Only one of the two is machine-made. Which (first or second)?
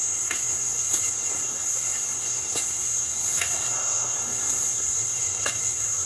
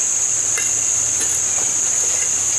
first